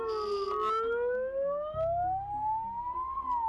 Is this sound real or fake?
real